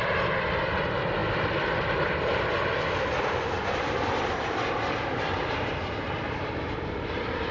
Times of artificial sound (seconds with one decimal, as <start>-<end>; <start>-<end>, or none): 1.2-5.5